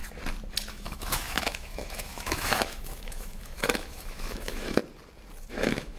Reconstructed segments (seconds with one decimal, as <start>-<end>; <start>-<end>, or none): 0.7-4.8; 5.5-6.0